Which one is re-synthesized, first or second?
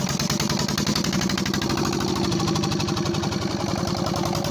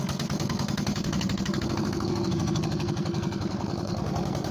second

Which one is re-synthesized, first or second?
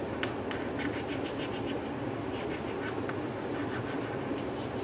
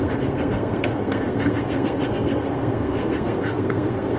second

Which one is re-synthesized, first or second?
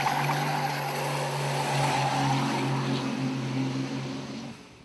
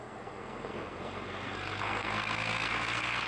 second